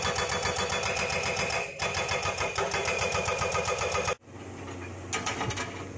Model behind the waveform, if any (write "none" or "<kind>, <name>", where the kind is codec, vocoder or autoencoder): none